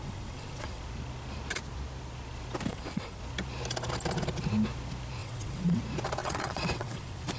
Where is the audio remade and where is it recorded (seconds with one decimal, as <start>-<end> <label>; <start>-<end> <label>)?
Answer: 0.0-0.8 remade; 0.8-2.7 recorded; 2.7-3.2 remade; 3.2-5.2 recorded; 5.2-5.8 remade; 5.8-6.2 recorded; 6.2-7.4 remade